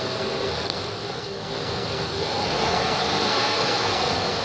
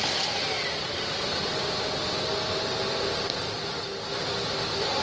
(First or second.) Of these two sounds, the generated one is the first